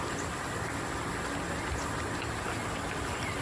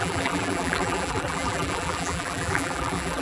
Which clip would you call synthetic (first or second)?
second